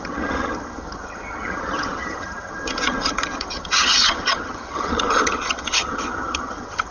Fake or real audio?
fake